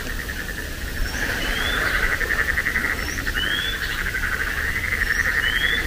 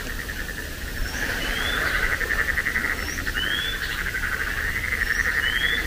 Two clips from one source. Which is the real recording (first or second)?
second